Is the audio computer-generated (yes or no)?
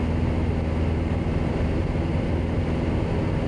no